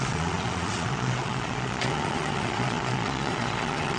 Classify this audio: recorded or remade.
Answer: remade